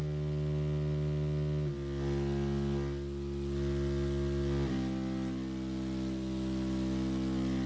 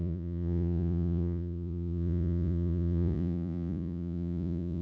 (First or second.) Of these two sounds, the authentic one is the first